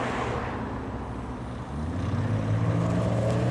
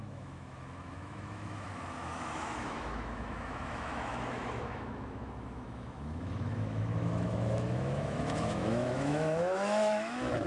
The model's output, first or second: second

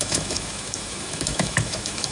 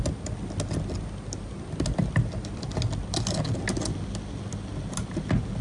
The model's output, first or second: first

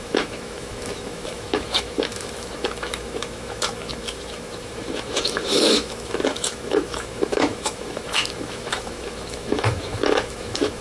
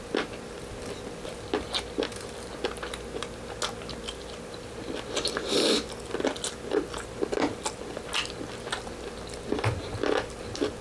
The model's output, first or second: first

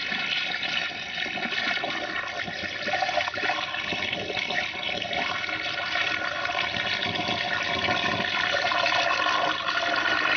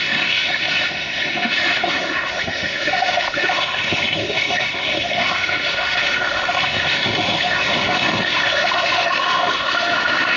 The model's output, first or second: second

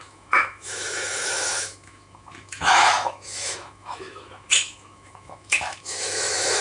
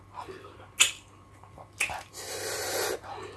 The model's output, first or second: first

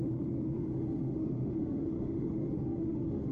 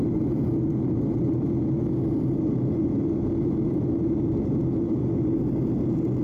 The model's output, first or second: first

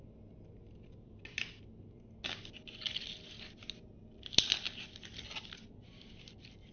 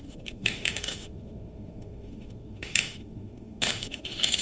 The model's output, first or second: second